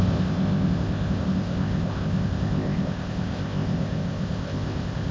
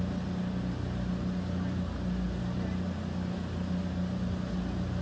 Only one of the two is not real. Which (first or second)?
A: first